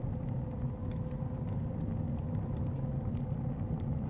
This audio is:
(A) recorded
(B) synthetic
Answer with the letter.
A